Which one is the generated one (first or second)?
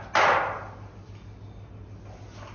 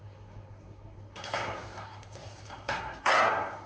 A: second